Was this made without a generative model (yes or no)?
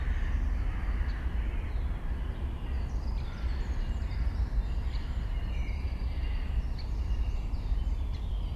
yes